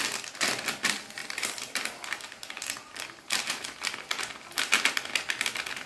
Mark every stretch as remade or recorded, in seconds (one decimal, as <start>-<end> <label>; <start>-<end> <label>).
0.0-1.2 recorded; 1.2-3.5 remade; 3.5-5.9 recorded